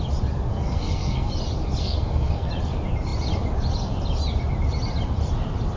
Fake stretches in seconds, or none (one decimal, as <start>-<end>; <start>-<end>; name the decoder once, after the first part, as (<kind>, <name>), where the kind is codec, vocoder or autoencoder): 0.5-1.3 (codec, SNAC); 1.8-2.5